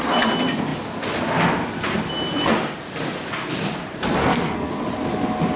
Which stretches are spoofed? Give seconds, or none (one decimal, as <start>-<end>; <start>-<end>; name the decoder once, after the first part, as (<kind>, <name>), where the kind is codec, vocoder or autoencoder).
4.2-4.7 (codec, SNAC)